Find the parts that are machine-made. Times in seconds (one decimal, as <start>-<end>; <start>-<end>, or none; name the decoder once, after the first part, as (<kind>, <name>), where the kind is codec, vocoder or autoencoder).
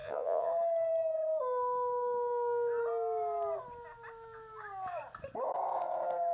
0.0-0.5 (vocoder, Vocos)